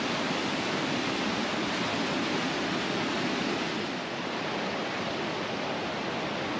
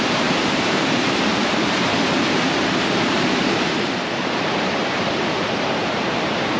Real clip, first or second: first